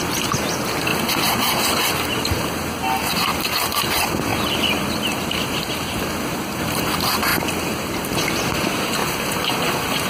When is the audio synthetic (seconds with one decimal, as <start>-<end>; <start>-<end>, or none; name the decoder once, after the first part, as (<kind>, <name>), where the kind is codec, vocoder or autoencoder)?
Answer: 9.0-10.1 (vocoder, BigVGAN v2)